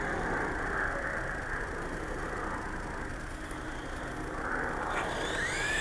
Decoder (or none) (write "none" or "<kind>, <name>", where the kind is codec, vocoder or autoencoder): none